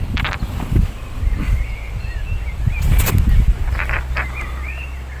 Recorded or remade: recorded